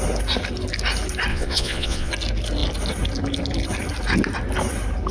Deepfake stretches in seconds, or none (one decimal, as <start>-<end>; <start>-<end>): 1.3-2.1